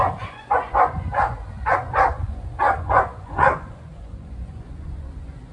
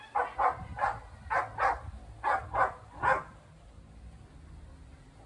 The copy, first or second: first